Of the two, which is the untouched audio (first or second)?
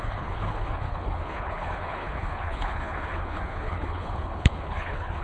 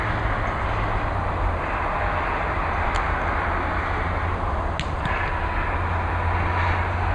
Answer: second